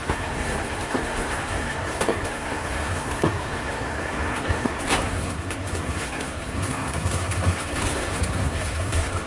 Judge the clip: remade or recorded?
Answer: remade